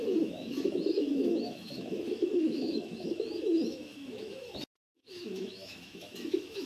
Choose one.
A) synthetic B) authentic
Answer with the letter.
A